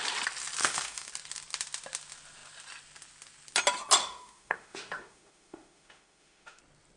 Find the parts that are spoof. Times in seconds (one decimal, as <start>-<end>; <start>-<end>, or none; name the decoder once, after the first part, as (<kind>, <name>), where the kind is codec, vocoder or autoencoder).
0.6-1.1 (autoencoder, DAC-VAE); 4.0-6.6